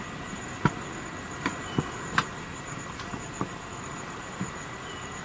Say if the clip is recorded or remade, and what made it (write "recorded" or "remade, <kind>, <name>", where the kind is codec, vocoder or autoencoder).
recorded